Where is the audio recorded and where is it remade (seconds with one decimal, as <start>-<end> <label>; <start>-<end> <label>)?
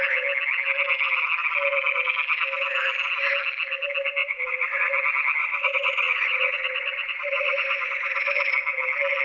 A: 0.0-4.2 recorded; 4.2-4.9 remade; 4.9-5.4 recorded; 5.4-8.5 remade; 8.5-9.2 recorded